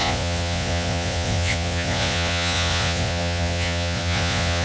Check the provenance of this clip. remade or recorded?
remade